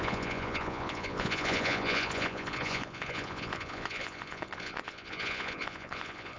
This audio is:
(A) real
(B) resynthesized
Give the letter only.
B